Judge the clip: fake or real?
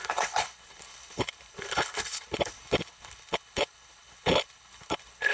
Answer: fake